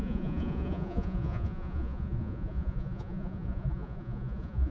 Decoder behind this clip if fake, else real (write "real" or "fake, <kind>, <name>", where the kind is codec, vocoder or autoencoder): fake, vocoder, Vocos